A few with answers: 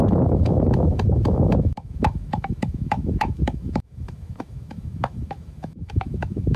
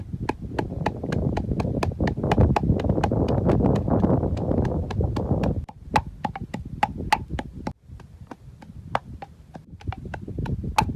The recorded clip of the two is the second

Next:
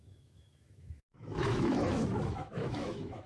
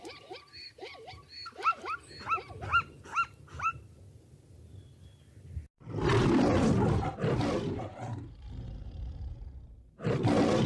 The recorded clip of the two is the second